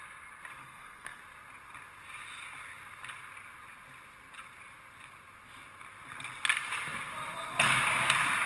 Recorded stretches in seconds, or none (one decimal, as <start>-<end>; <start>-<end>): 0.0-0.6; 1.2-8.5